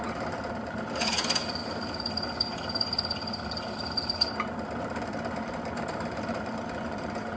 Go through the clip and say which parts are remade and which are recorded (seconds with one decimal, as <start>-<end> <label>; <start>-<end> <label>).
0.0-1.6 remade; 1.6-4.8 recorded; 4.8-7.4 remade